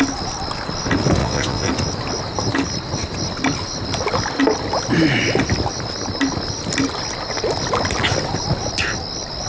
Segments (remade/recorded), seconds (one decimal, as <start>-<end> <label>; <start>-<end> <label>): 0.0-1.2 recorded; 1.2-1.7 remade; 1.7-9.5 recorded